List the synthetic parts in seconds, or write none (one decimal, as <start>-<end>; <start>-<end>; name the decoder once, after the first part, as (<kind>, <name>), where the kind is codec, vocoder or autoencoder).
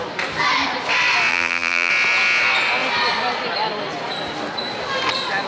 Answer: 1.3-1.9 (vocoder, BigVGAN v2)